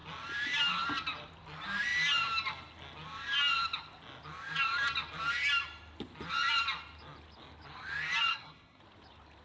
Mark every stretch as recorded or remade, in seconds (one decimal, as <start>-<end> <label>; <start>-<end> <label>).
0.0-8.3 recorded; 8.3-8.8 remade; 8.8-9.4 recorded